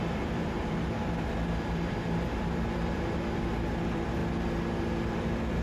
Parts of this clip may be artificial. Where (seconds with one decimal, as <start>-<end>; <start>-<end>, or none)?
0.0-4.2; 4.8-5.6